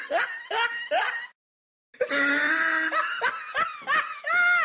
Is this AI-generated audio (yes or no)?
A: no